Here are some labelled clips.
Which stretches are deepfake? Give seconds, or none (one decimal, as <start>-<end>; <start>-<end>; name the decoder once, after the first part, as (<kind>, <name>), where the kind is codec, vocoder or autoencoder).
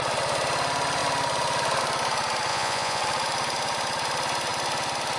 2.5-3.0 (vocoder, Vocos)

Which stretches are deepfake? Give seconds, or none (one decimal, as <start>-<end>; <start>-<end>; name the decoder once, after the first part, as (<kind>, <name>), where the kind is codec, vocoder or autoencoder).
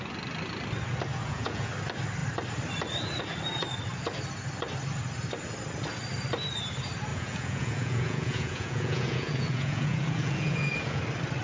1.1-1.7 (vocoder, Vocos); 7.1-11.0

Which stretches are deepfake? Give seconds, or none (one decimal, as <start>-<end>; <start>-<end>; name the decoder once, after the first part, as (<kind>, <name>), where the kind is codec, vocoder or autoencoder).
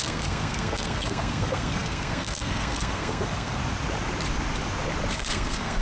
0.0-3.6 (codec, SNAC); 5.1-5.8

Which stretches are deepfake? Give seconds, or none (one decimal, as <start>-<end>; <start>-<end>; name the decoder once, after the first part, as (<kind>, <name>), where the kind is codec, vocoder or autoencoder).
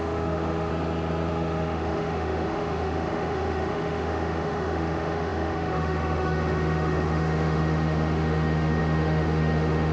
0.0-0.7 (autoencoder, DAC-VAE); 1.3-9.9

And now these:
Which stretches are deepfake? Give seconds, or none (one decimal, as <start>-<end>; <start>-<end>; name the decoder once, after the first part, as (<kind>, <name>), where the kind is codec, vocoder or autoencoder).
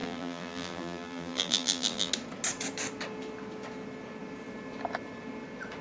0.0-2.1 (vocoder, BigVGAN v2)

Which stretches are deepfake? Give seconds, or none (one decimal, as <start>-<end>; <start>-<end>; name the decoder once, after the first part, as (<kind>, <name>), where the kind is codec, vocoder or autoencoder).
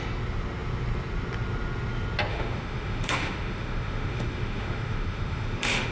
2.3-5.9 (autoencoder, DAC-VAE)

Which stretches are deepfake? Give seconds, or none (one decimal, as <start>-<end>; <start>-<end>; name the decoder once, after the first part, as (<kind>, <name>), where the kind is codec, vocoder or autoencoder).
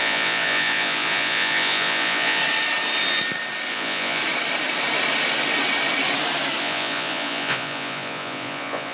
0.0-2.4 (vocoder, Vocos); 3.7-4.2; 6.6-8.9